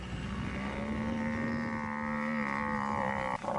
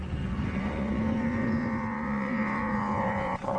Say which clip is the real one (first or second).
first